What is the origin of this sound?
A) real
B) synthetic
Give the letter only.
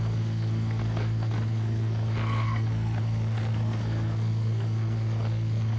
B